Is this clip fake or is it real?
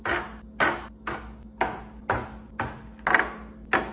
real